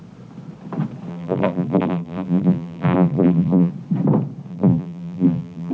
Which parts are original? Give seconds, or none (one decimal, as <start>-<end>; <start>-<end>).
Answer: 0.0-1.1; 3.7-4.5